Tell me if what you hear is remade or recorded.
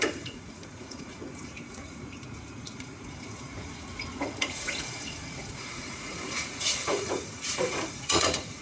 remade